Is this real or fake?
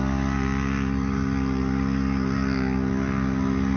real